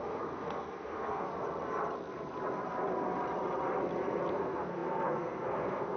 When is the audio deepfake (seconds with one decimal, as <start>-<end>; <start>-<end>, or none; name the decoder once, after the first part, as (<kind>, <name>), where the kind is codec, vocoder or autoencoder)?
0.0-1.3 (codec, SNAC); 4.3-6.0